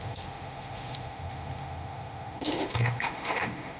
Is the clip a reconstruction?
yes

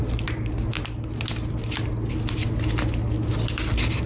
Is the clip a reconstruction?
no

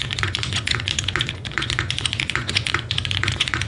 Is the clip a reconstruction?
yes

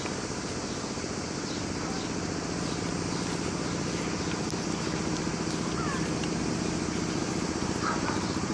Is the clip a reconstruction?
no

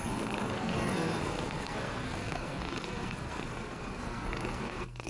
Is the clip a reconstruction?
yes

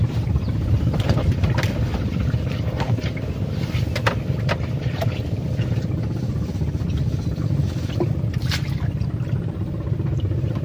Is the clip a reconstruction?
yes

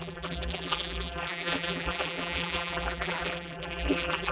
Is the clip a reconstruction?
yes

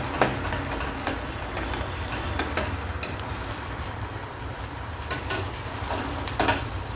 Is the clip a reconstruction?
yes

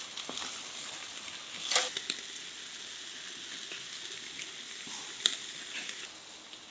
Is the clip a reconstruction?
no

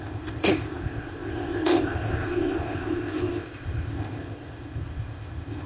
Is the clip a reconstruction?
yes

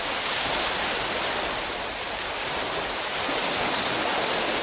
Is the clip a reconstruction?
no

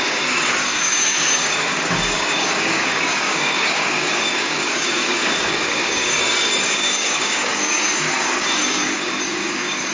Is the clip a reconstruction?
yes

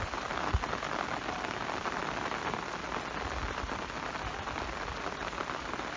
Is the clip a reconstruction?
no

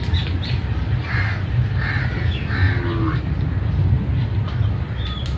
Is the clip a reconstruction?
no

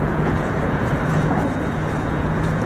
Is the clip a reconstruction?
yes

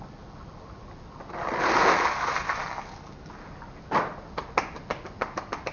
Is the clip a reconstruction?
no